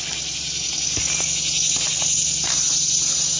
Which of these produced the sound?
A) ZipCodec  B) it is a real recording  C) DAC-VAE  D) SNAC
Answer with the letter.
B